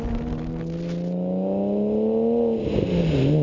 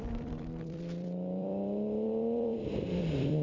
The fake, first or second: second